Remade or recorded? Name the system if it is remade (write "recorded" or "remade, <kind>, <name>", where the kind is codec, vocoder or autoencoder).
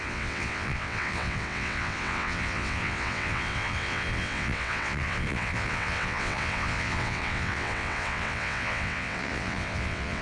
remade, vocoder, WaveNeXt